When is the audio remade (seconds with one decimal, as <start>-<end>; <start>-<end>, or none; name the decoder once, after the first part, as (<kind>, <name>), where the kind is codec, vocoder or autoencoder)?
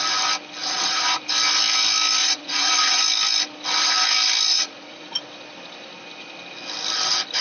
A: 0.6-1.2 (vocoder, Vocos); 2.2-3.0; 4.5-5.2